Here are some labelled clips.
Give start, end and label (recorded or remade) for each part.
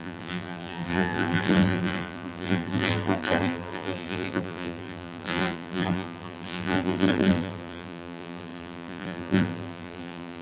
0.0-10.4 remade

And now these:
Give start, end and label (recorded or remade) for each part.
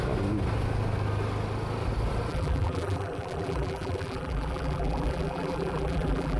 0.0-2.3 recorded; 2.3-6.4 remade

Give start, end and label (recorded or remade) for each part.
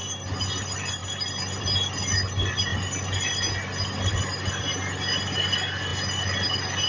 0.0-6.9 recorded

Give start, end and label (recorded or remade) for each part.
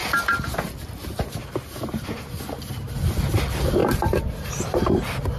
0.0-2.6 recorded; 2.6-5.4 remade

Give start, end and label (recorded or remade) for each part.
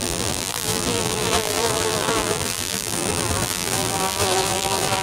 0.0-5.0 remade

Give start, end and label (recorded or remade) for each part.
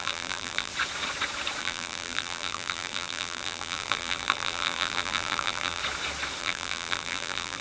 0.0-0.7 remade; 0.7-1.6 recorded; 1.6-5.8 remade; 5.8-6.4 recorded; 6.4-7.6 remade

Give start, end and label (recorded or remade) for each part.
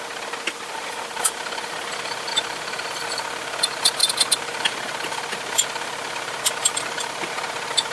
0.0-7.9 remade